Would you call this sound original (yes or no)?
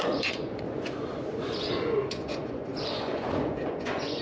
no